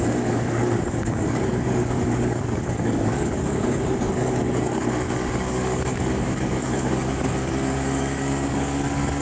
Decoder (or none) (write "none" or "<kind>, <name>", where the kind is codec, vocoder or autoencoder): codec, DAC